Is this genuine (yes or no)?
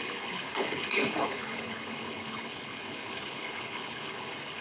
no